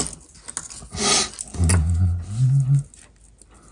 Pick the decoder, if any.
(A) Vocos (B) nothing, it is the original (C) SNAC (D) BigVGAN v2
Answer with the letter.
B